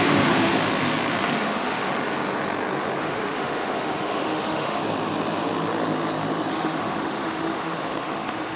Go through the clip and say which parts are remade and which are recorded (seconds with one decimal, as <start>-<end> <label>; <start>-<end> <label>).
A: 0.0-0.5 remade; 0.5-1.4 recorded; 1.4-1.9 remade; 1.9-3.0 recorded; 3.0-4.8 remade; 4.8-6.5 recorded; 6.5-8.6 remade